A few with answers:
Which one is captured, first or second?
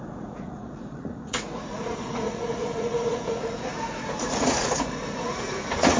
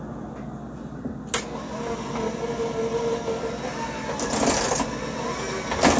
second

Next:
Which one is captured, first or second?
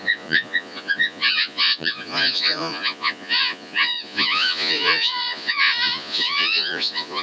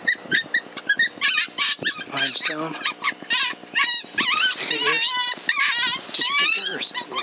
second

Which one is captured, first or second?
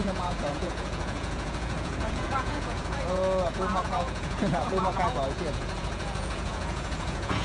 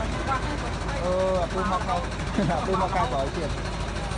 second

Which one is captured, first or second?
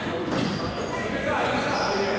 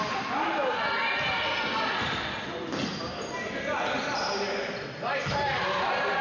second